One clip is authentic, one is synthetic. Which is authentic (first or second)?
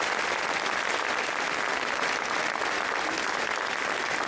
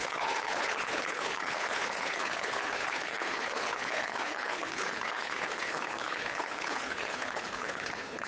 first